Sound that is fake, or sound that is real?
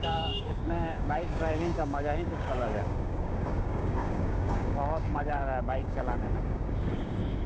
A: fake